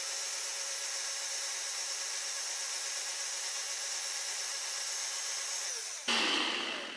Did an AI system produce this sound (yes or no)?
no